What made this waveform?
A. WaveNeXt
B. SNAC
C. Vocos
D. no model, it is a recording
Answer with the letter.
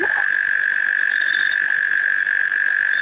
D